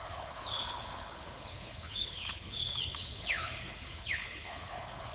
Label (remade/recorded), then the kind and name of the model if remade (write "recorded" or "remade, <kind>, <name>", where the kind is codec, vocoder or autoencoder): remade, codec, HILCodec